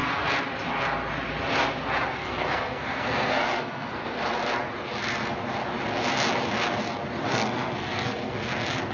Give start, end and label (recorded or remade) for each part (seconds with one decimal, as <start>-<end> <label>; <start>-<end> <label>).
0.0-2.2 recorded; 2.2-4.2 remade; 4.2-7.3 recorded; 7.3-8.5 remade; 8.5-8.9 recorded